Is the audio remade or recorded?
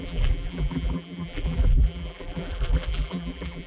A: remade